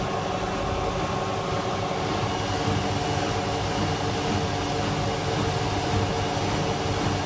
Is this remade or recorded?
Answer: recorded